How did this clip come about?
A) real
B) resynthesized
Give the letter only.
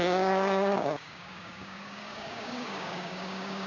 B